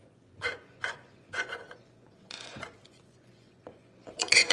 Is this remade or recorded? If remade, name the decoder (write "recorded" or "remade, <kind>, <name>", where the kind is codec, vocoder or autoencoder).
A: remade, vocoder, Vocos